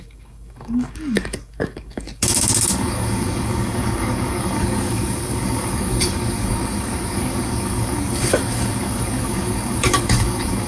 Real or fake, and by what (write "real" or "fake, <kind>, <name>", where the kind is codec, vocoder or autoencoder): fake, codec, DAC